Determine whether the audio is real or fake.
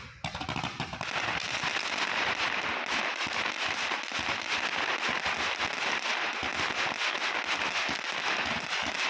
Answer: real